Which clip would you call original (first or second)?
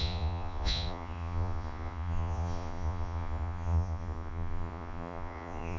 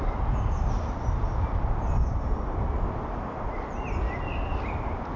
second